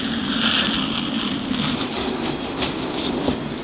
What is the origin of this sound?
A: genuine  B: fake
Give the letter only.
A